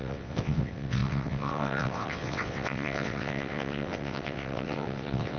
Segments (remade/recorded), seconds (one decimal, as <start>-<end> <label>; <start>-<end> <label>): 0.0-5.4 remade